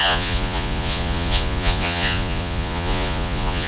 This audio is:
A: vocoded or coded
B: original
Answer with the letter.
A